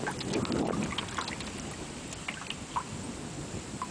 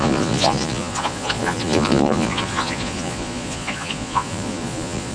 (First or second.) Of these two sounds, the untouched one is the first